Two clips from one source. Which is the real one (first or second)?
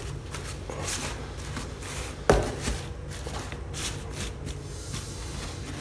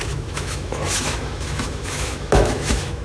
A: first